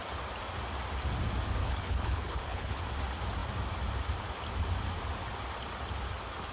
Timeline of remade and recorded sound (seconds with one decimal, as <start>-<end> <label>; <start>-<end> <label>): 0.0-1.6 recorded; 1.6-2.8 remade; 2.8-6.5 recorded